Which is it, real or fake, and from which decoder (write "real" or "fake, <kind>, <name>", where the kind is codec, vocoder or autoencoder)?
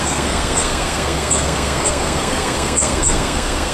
fake, codec, SNAC